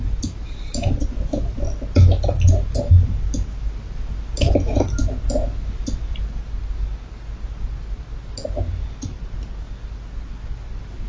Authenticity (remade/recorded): recorded